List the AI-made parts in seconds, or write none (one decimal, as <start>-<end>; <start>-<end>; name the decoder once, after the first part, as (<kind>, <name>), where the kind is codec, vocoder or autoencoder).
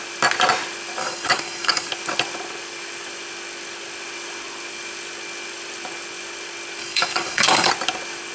1.0-1.9 (codec, DAC); 6.8-7.7